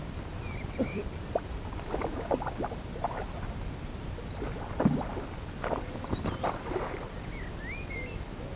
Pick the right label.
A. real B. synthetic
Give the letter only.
B